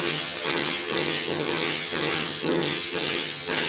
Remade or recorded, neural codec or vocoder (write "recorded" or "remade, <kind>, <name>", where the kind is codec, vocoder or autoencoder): remade, vocoder, HiFi-GAN